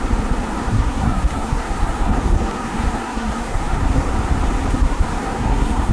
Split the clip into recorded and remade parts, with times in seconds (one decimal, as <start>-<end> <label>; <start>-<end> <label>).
0.0-0.6 recorded; 0.6-4.1 remade; 4.1-4.7 recorded; 4.7-5.9 remade